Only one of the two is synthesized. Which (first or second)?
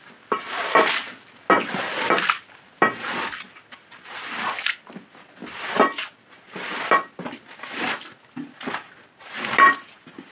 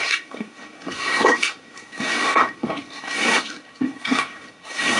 second